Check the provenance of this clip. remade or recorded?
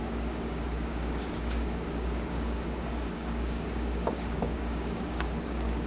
remade